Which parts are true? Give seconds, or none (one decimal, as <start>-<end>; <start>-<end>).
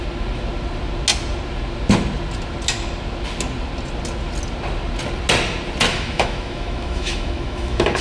0.0-5.9